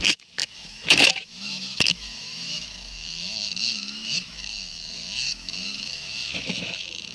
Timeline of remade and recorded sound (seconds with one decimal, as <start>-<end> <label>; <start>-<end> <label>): 0.0-7.1 remade